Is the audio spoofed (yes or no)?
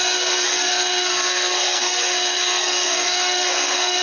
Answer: yes